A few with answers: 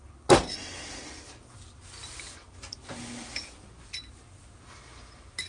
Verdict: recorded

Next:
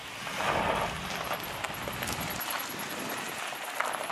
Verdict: recorded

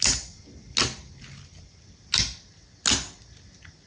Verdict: recorded